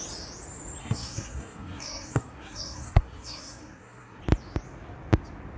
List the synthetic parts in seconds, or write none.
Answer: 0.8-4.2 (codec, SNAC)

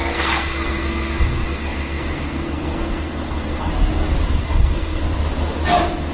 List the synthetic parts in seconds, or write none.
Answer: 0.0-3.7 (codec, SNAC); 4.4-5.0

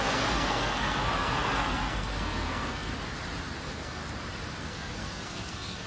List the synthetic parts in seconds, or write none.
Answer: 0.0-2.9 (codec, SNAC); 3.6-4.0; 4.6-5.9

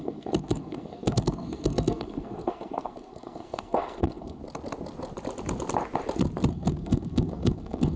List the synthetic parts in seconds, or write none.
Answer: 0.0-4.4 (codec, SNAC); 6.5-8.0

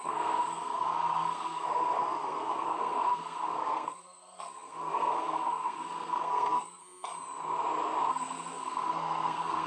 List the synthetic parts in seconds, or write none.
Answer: 0.0-6.8 (codec, SNAC); 8.1-9.7